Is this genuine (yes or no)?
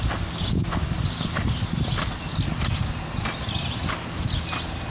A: yes